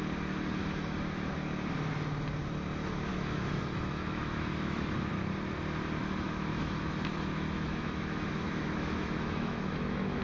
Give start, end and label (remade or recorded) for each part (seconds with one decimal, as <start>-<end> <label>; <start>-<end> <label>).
0.0-0.6 recorded; 0.6-1.3 remade; 1.3-3.1 recorded; 3.1-5.1 remade; 5.1-6.0 recorded; 6.0-10.2 remade